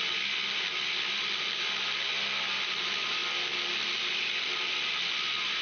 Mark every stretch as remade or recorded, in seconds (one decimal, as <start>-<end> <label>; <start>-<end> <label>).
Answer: 0.0-5.6 recorded